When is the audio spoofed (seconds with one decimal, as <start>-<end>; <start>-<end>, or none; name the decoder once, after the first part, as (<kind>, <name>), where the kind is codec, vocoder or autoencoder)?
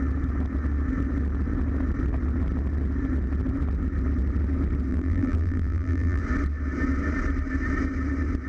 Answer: 4.9-6.2 (vocoder, BigVGAN v2)